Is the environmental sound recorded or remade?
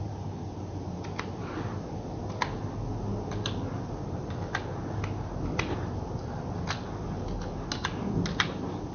recorded